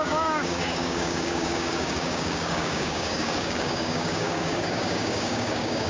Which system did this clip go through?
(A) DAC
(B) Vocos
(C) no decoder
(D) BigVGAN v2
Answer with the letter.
A